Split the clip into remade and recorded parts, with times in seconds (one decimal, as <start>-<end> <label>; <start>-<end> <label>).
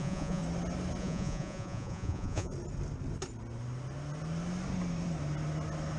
0.0-0.4 remade; 0.4-1.0 recorded; 1.0-2.5 remade; 2.5-6.0 recorded